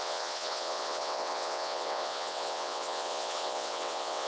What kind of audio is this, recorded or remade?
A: remade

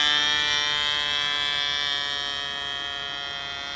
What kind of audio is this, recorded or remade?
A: recorded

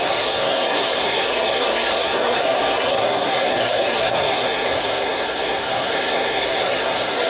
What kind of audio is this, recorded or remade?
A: remade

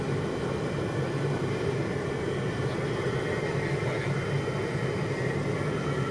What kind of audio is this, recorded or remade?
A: recorded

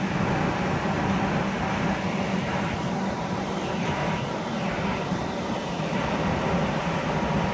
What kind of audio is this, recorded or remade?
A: recorded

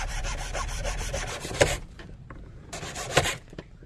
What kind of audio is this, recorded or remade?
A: remade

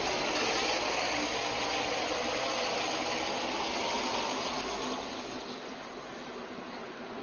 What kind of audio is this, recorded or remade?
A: recorded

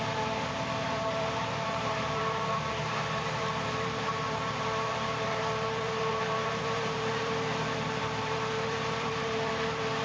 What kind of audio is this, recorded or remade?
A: remade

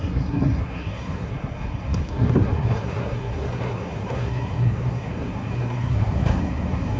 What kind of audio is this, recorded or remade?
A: remade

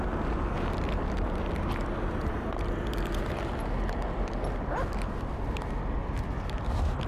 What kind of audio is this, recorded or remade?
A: recorded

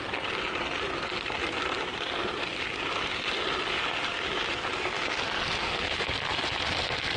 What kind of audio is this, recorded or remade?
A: recorded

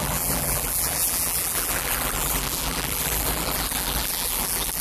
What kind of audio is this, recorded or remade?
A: remade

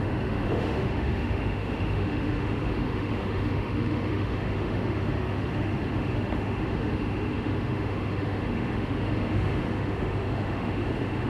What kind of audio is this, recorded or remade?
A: remade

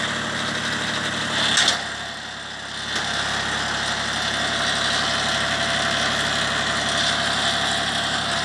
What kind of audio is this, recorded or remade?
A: recorded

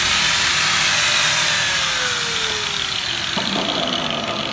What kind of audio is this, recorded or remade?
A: recorded